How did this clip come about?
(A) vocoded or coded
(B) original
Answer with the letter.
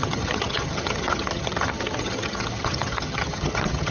A